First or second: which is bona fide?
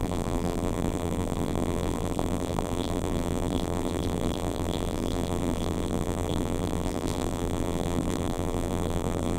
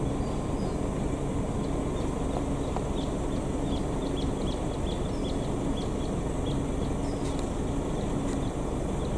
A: second